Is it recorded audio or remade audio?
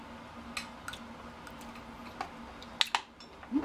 recorded